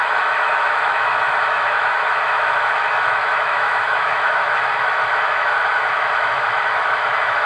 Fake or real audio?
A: fake